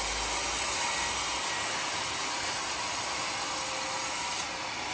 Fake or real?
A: real